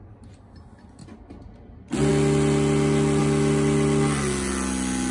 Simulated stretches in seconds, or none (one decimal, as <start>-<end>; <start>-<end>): none